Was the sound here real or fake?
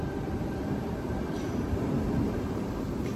fake